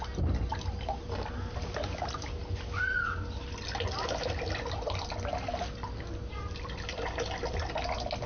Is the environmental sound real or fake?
real